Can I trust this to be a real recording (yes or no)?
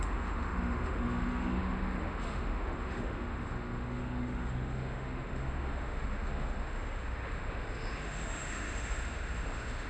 no